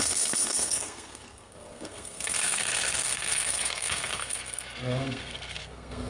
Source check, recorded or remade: remade